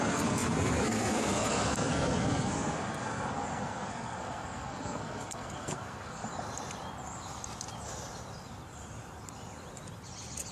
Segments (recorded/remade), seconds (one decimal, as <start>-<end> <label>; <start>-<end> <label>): 0.0-6.2 remade; 6.2-10.5 recorded